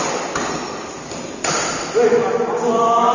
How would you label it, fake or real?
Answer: real